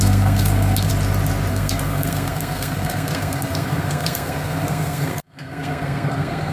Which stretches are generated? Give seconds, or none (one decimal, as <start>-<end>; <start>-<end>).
0.0-0.9; 1.5-6.5